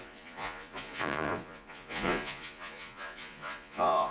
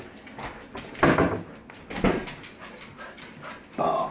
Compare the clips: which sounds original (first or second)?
second